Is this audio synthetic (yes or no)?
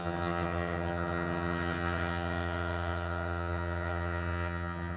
yes